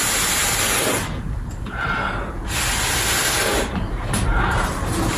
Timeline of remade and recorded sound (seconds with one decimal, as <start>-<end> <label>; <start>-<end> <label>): 0.0-0.5 remade; 0.5-3.2 recorded; 3.2-5.2 remade